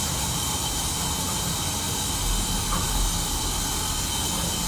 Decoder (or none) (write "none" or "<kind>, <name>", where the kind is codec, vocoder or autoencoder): none